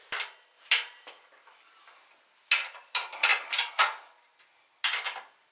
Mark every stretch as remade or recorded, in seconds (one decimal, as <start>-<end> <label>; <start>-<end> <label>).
0.0-5.5 recorded